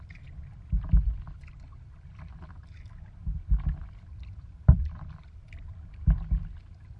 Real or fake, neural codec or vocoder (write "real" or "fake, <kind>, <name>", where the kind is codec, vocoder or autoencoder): real